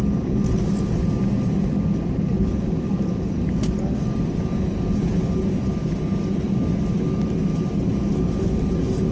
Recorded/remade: recorded